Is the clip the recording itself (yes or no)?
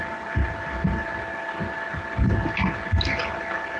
yes